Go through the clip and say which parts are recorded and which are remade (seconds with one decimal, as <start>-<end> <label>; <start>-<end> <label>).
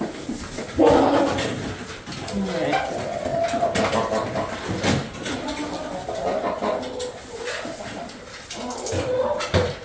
0.0-9.8 recorded